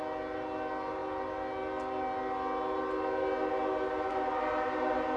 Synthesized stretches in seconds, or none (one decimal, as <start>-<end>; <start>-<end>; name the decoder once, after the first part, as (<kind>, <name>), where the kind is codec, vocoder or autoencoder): none